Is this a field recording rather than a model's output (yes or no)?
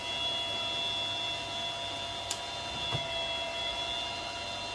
yes